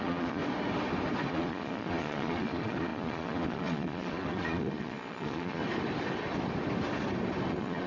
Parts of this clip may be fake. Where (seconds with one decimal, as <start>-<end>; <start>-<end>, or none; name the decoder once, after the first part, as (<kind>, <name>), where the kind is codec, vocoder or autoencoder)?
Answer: 0.0-0.4 (vocoder, Vocos); 1.3-5.6; 7.5-7.9